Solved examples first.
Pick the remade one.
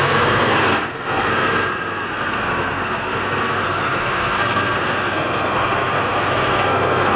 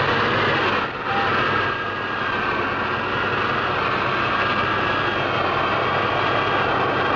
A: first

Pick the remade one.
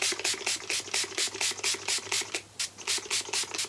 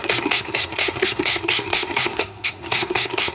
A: second